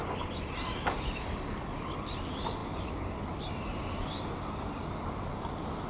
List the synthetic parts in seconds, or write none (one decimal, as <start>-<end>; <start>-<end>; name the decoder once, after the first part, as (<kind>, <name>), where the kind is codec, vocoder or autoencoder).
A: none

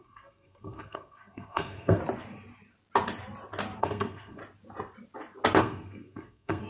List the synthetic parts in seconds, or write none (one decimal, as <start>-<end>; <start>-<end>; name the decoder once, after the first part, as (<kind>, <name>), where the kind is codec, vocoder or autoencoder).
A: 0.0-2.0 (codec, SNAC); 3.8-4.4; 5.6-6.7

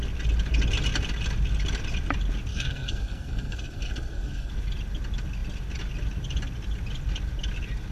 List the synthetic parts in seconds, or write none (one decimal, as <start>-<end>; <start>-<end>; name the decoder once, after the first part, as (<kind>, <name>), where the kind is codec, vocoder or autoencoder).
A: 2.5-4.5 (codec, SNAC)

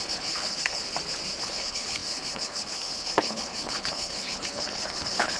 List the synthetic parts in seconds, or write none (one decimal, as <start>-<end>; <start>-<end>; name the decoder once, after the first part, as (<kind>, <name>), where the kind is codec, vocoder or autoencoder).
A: 0.0-0.8 (codec, HILCodec); 1.4-5.4